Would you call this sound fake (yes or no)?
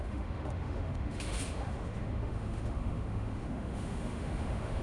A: yes